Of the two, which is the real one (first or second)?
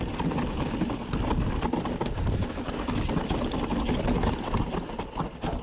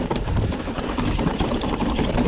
first